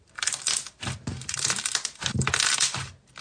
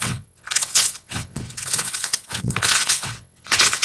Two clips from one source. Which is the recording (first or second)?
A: first